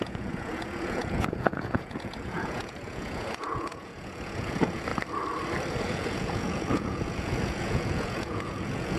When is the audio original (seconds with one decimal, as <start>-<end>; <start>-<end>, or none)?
4.9-5.7